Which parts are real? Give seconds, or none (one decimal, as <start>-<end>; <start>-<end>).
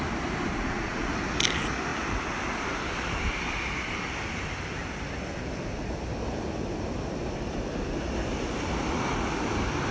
0.0-0.5; 1.1-9.9